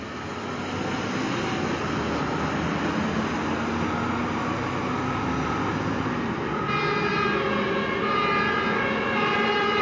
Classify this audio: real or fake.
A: real